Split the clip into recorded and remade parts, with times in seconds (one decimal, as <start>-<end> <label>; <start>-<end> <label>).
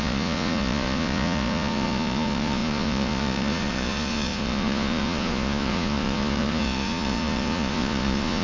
0.0-8.4 remade